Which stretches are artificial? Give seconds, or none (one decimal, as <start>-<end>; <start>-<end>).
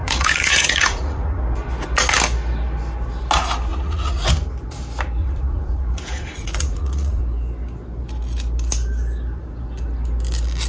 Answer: 0.0-1.4; 3.7-4.3; 5.2-7.2